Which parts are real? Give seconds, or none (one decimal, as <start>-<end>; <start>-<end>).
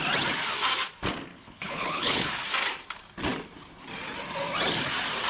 0.0-1.3; 2.4-5.3